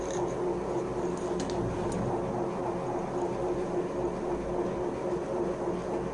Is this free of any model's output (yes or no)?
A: yes